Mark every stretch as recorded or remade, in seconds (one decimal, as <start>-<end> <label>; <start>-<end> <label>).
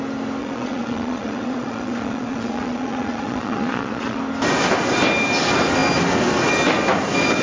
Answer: 0.0-0.4 recorded; 0.4-4.2 remade; 4.2-7.4 recorded